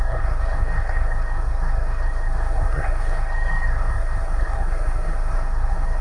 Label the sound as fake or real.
fake